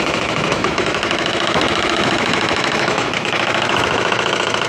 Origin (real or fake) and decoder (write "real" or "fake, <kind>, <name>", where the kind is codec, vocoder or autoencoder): fake, autoencoder, DAC-VAE